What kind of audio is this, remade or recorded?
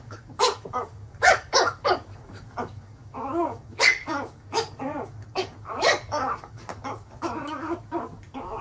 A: remade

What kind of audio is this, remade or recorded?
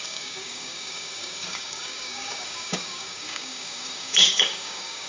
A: remade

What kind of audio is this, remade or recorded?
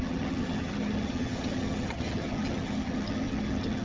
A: remade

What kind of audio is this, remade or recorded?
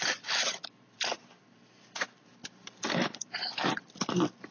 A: remade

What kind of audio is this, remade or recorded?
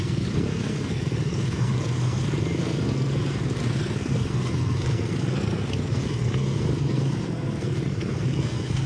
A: remade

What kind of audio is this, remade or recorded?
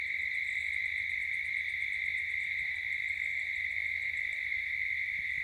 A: recorded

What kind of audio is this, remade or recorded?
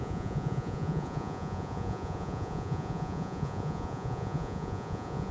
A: remade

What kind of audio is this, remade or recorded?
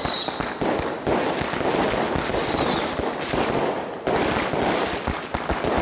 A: recorded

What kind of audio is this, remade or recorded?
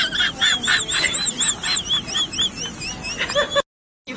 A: recorded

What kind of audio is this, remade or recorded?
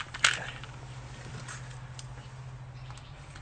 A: recorded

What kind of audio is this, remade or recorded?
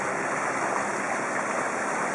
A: recorded